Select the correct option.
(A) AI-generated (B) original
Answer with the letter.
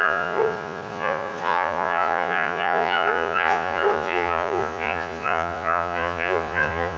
A